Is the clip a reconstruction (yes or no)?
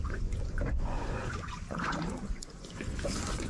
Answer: yes